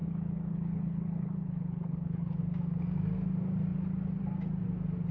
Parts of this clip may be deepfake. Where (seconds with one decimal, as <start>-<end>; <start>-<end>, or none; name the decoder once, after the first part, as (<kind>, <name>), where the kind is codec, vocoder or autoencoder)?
0.0-2.4 (codec, HILCodec)